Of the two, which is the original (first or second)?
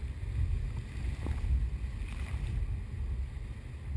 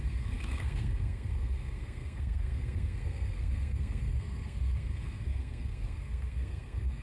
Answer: first